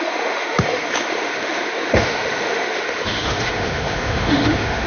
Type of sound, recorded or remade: remade